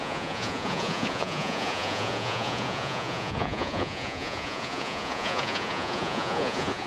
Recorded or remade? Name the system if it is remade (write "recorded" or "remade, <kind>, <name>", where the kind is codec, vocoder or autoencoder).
remade, vocoder, Vocos